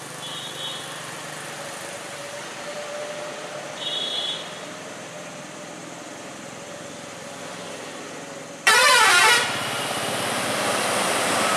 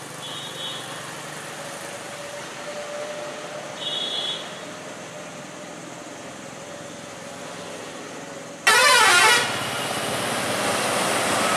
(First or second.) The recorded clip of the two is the second